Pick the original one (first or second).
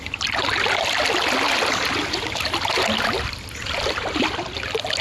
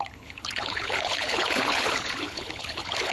first